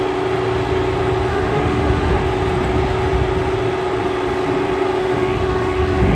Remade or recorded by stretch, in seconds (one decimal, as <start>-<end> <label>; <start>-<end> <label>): 0.0-1.3 recorded; 1.3-2.2 remade; 2.2-5.0 recorded; 5.0-6.2 remade